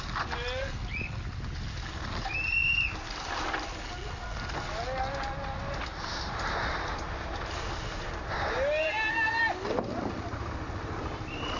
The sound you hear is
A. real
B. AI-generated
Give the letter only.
A